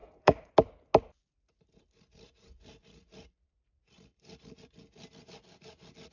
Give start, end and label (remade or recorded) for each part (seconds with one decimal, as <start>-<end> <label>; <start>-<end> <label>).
0.0-0.5 remade; 0.5-6.1 recorded